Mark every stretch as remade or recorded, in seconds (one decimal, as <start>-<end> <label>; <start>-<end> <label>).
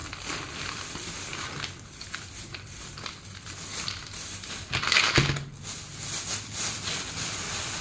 0.0-4.7 remade; 4.7-7.8 recorded